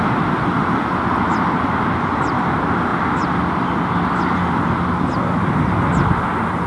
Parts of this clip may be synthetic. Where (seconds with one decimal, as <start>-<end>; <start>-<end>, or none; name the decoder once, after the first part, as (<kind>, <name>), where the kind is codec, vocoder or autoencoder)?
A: none